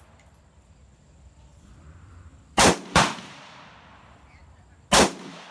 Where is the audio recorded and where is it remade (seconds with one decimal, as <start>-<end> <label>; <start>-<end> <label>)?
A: 0.0-4.4 remade; 4.4-5.0 recorded; 5.0-5.5 remade